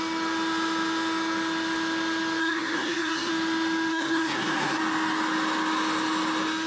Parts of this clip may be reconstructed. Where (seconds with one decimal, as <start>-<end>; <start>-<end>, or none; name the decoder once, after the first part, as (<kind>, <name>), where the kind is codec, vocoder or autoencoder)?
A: 2.4-3.3 (codec, SNAC); 3.9-4.8